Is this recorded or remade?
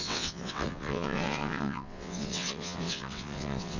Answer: remade